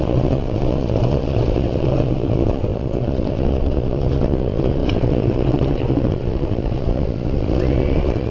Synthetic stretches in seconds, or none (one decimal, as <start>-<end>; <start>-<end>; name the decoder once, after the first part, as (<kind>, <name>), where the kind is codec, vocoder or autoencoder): 0.0-8.3 (vocoder, WaveNeXt)